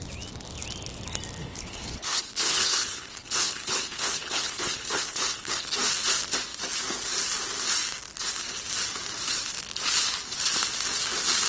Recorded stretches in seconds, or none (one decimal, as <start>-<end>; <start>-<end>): 0.0-1.4; 5.5-11.5